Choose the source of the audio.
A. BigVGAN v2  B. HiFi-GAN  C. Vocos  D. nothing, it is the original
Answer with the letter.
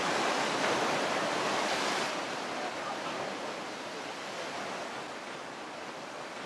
D